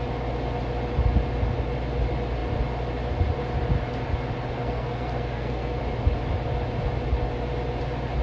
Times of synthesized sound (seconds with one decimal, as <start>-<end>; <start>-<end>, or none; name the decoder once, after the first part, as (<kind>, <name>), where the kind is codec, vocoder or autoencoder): 4.6-5.8 (codec, SNAC)

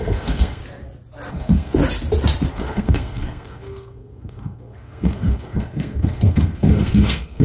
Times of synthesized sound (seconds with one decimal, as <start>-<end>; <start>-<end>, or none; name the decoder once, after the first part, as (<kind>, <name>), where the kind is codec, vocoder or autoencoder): 0.0-0.6 (codec, SNAC); 1.3-1.8; 2.5-7.4

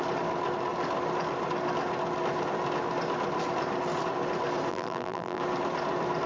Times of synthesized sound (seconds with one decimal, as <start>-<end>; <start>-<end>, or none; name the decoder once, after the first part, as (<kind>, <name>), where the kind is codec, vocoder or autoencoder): 4.7-5.4 (vocoder, BigVGAN v2)

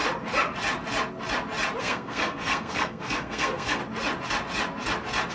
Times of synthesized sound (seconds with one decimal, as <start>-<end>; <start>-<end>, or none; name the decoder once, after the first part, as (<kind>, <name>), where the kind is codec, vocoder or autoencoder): 1.8-3.8 (codec, SNAC)

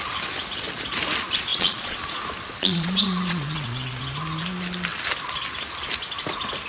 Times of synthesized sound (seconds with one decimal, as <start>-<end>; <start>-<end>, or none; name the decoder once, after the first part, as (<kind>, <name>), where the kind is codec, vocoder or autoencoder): 1.5-2.2 (vocoder, Vocos); 2.6-4.0

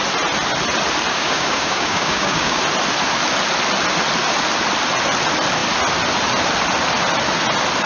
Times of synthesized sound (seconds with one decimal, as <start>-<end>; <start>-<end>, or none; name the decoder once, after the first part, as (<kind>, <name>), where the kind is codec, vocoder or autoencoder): 1.1-2.6 (codec, DAC)

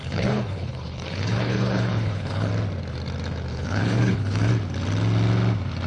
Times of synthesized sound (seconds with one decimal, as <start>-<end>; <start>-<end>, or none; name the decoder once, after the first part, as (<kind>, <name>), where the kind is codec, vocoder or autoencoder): 0.0-2.5 (codec, HILCodec); 3.5-4.5

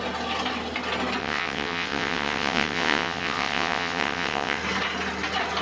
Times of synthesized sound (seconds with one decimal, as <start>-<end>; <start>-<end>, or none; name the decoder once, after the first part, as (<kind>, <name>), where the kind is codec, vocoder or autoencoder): 1.2-4.6 (vocoder, WaveNeXt)